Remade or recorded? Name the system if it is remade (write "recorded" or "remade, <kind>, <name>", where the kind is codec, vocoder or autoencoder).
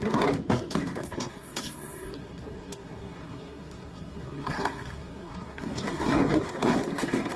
remade, codec, SNAC